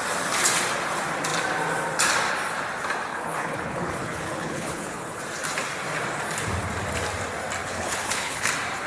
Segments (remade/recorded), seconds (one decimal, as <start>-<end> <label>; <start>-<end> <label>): 0.0-3.1 recorded; 3.1-5.2 remade; 5.2-7.6 recorded; 7.6-8.5 remade; 8.5-8.9 recorded